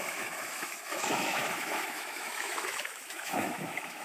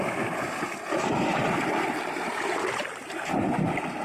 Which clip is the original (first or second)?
second